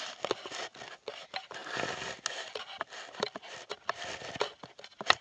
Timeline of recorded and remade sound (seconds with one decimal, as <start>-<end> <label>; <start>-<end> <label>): 0.0-5.2 recorded